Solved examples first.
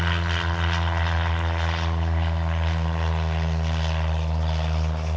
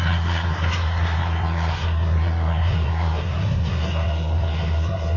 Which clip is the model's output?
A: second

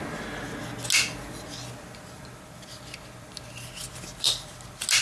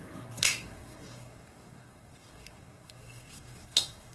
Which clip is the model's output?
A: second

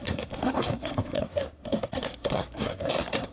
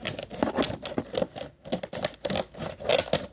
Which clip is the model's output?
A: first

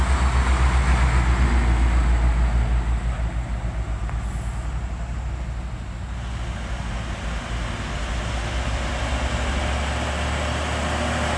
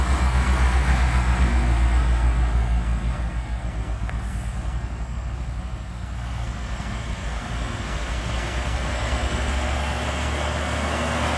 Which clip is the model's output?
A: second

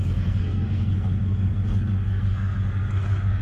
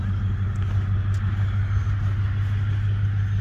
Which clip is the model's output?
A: first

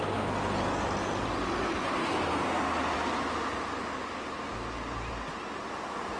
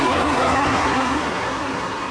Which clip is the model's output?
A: second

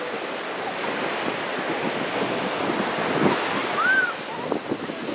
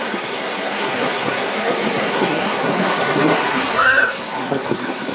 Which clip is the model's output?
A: second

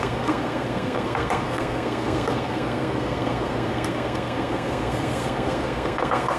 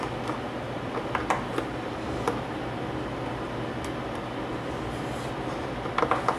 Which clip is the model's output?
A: first